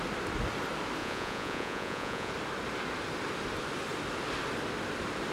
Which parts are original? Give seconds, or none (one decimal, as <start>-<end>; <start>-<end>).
0.0-1.0; 2.3-5.3